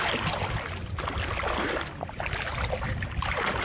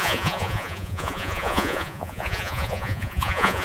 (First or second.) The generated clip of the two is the second